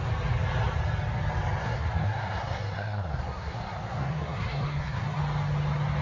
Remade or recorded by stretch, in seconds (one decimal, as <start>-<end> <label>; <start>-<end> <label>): 0.0-1.6 recorded; 1.6-5.2 remade; 5.2-6.0 recorded